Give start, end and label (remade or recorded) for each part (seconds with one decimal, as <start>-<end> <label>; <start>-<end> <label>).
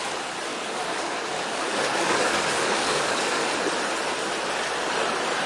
0.0-0.5 recorded; 0.5-3.5 remade; 3.5-5.5 recorded